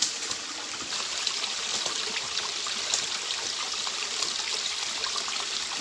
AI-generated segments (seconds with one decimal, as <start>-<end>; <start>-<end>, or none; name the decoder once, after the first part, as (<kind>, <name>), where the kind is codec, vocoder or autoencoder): 0.0-1.7 (vocoder, BigVGAN v2); 3.6-5.8